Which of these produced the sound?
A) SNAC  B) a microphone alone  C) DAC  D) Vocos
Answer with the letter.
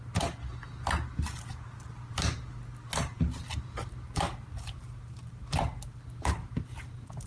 B